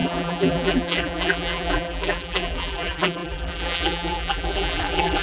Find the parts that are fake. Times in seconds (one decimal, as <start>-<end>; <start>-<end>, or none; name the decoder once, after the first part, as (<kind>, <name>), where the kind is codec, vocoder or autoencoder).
0.0-5.2 (vocoder, BigVGAN v2)